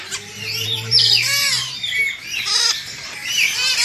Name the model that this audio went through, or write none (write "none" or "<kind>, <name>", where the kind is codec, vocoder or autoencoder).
vocoder, BigVGAN v2